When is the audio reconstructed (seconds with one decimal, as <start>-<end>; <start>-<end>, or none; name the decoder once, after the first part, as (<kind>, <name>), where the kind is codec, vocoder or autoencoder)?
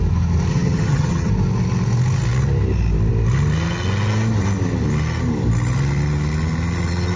0.5-1.3 (vocoder, HiFi-GAN)